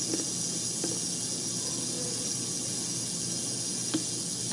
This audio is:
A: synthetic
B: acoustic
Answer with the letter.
B